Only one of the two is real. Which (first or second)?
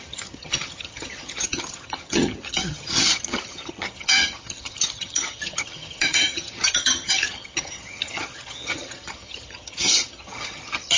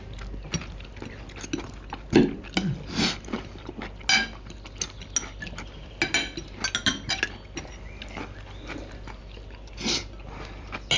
second